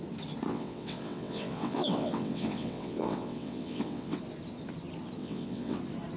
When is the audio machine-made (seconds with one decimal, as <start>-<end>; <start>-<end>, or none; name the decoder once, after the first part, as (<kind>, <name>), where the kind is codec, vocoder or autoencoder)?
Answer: 0.5-4.2 (vocoder, WaveNeXt); 5.2-5.8